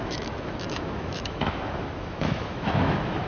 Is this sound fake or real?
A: fake